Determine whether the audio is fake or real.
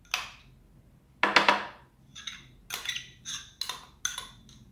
real